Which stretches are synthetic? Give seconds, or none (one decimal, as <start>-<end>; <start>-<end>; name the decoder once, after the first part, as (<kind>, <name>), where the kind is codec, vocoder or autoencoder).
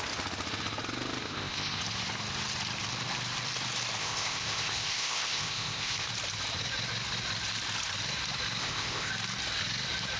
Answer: 1.2-1.8 (codec, ZipCodec); 4.0-6.1; 8.6-9.1